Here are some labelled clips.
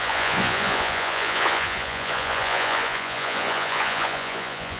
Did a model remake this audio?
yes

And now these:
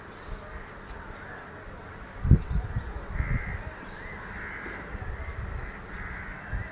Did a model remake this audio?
no